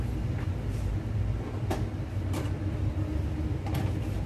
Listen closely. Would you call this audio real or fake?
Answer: real